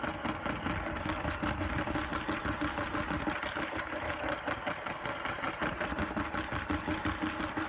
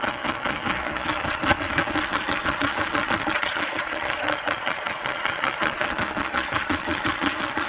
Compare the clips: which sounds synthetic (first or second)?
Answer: second